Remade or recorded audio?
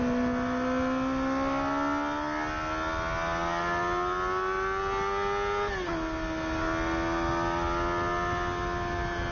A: recorded